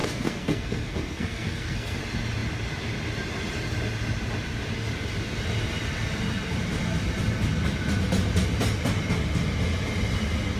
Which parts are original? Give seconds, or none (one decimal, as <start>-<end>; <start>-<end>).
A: 2.0-10.6